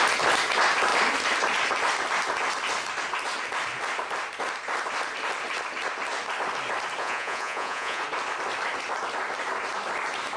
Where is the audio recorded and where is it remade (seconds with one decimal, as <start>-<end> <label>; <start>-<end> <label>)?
0.0-7.0 recorded; 7.0-8.0 remade; 8.0-10.4 recorded